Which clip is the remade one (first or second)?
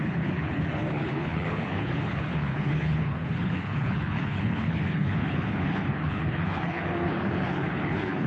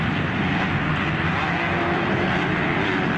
first